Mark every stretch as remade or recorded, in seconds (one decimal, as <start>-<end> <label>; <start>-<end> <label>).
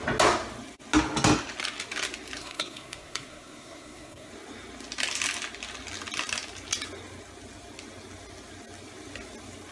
0.0-2.4 recorded; 2.4-4.3 remade; 4.3-9.7 recorded